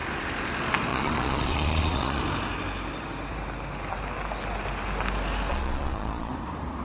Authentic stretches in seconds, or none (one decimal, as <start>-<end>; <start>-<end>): 0.0-0.9; 2.2-5.5; 6.3-6.8